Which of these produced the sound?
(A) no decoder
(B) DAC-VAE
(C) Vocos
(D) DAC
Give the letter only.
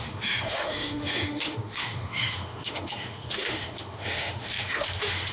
B